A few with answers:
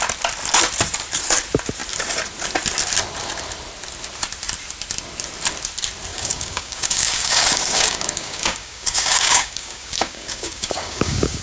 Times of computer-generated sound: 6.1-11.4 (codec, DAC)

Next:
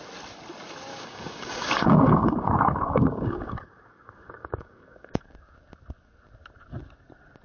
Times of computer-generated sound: 0.9-5.3 (codec, DAC)

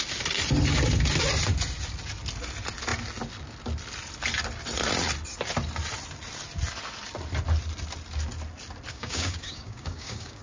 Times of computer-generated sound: 8.9-10.4 (codec, DAC)

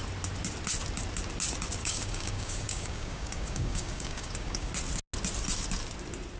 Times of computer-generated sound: 1.8-4.7 (codec, DAC)

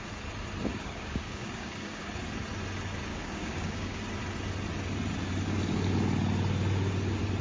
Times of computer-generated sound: 0.7-2.1 (codec, DAC); 3.1-4.0

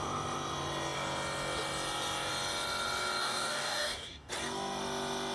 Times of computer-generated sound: 3.2-4.3 (codec, DAC)